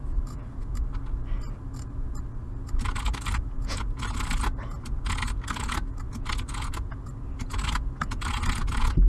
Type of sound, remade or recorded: recorded